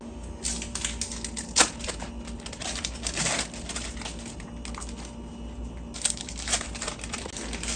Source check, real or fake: real